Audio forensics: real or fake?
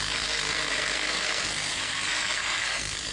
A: fake